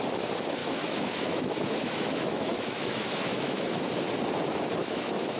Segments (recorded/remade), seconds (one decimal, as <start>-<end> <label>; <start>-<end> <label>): 0.0-0.6 recorded; 0.6-3.8 remade; 3.8-4.8 recorded; 4.8-5.4 remade